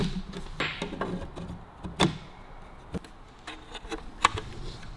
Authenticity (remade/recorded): recorded